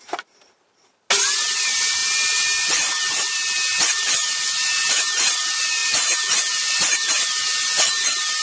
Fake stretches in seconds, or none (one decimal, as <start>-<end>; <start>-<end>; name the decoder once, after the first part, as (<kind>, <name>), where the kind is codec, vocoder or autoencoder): none